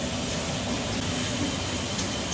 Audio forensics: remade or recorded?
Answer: recorded